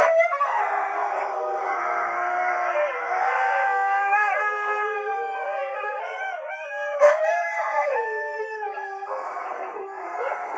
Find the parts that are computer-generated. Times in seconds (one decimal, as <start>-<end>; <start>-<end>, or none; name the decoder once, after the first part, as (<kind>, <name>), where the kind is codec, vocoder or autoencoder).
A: 0.0-10.6 (codec, SNAC)